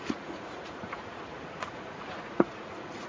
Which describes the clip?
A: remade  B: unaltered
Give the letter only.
A